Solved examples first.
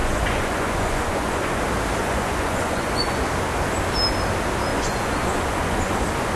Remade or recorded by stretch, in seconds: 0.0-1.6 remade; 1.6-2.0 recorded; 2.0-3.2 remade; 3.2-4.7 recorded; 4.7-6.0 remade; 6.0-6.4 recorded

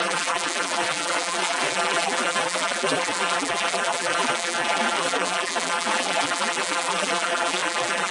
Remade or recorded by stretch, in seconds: 0.0-8.1 remade

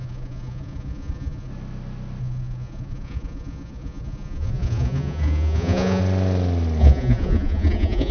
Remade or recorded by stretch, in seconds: 0.0-1.5 remade; 1.5-2.2 recorded; 2.2-6.0 remade; 6.0-6.8 recorded; 6.8-8.1 remade

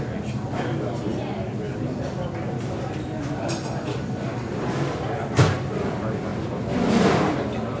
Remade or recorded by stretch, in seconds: 0.0-7.8 recorded

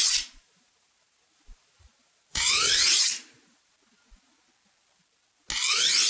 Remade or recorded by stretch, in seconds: 0.0-3.7 remade; 3.7-6.1 recorded

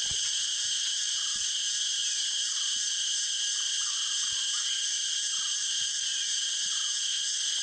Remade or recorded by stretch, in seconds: 0.0-7.6 remade

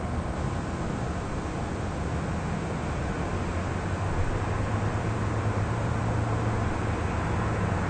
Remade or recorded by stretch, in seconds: 0.0-2.8 recorded; 2.8-6.0 remade; 6.0-7.9 recorded